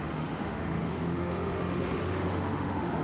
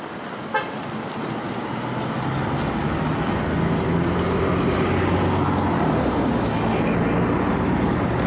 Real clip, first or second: second